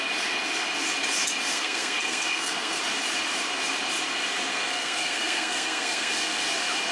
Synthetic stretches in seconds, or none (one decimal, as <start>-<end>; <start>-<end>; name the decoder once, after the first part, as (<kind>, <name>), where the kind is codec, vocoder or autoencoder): 1.5-2.8 (codec, SNAC); 4.5-6.1